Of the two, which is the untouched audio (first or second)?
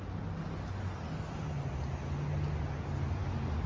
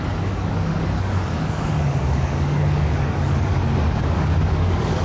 first